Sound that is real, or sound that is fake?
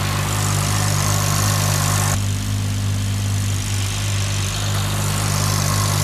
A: real